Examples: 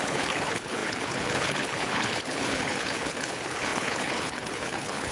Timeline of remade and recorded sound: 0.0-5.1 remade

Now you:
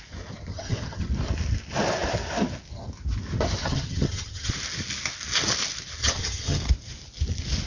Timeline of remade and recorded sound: 0.0-0.5 recorded; 0.5-1.1 remade; 1.1-3.6 recorded; 3.6-4.5 remade; 4.5-6.0 recorded; 6.0-6.6 remade; 6.6-7.7 recorded

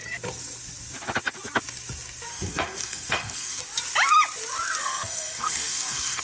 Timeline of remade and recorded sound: 0.0-2.3 recorded; 2.3-3.6 remade; 3.6-4.8 recorded; 4.8-6.2 remade

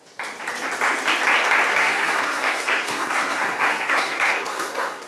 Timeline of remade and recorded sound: 0.0-1.7 recorded; 1.7-5.1 remade

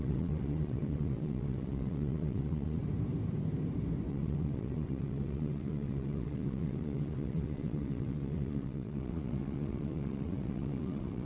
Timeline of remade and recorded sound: 0.0-2.8 remade; 2.8-4.1 recorded; 4.1-11.3 remade

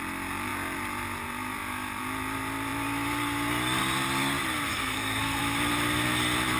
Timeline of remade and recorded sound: 0.0-4.7 recorded; 4.7-5.4 remade; 5.4-6.6 recorded